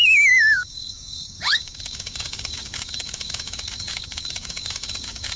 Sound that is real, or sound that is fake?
fake